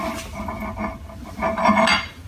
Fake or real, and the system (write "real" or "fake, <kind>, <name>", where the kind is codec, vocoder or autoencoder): real